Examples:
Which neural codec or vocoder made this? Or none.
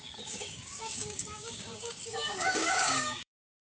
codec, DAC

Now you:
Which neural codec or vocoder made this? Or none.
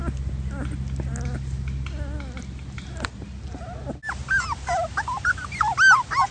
none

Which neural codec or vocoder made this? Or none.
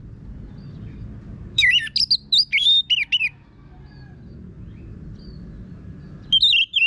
none